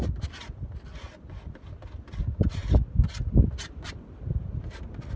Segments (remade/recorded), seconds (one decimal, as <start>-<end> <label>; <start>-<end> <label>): 0.0-5.2 recorded